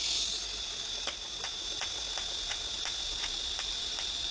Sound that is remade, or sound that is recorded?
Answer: recorded